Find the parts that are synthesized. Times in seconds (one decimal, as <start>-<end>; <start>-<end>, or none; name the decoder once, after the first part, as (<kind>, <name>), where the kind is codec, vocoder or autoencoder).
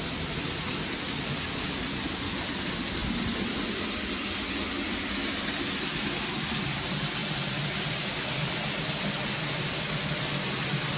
none